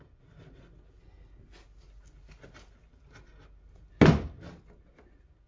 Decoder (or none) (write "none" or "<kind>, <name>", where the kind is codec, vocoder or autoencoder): none